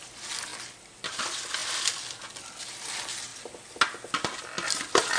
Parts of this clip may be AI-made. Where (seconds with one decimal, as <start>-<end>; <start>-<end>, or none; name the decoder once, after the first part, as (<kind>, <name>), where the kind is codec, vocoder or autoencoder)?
none